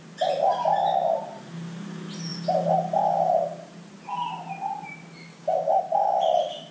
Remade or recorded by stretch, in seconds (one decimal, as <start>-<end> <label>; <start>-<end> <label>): 0.0-5.3 recorded; 5.3-5.8 remade; 5.8-6.7 recorded